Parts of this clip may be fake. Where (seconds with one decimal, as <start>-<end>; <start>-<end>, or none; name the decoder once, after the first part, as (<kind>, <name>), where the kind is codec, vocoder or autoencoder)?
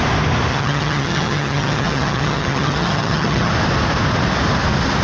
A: 0.5-3.5 (vocoder, HiFi-GAN)